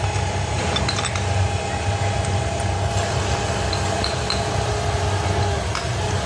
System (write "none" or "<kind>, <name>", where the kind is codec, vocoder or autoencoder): none